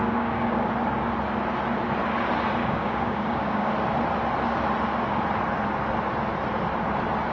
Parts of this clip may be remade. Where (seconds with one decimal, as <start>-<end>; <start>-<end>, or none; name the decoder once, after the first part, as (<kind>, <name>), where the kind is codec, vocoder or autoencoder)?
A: 0.0-0.7 (codec, DAC); 2.6-3.7